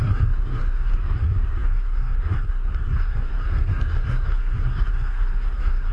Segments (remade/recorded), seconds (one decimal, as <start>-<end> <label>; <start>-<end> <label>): 0.0-5.9 remade